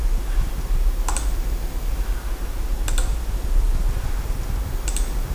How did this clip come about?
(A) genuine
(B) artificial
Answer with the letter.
A